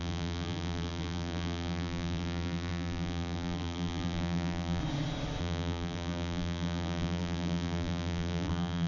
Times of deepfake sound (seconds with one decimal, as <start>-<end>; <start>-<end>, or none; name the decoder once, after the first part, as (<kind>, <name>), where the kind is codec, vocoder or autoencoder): 0.0-4.8 (vocoder, BigVGAN v2); 5.4-8.9